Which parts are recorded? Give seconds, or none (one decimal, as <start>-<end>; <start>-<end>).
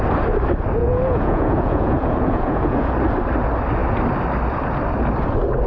0.0-0.8; 2.9-5.7